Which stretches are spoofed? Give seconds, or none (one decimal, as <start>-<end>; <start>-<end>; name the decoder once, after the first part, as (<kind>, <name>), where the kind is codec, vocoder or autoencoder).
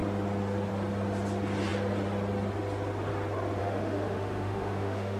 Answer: 3.6-5.2 (autoencoder, DAC-VAE)